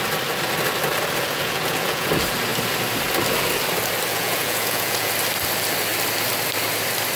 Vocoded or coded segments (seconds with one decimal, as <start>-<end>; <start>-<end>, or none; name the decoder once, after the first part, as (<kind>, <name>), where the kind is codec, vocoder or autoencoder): 1.3-2.1 (vocoder, Vocos); 4.1-5.1